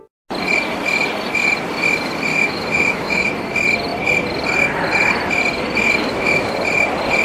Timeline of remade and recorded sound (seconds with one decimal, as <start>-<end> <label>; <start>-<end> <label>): 0.0-2.3 recorded; 2.3-3.3 remade; 3.3-6.0 recorded; 6.0-6.5 remade; 6.5-7.2 recorded